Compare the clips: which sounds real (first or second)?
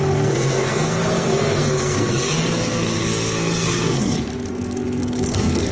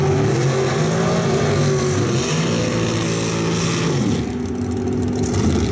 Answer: second